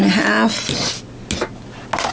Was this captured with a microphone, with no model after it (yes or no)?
yes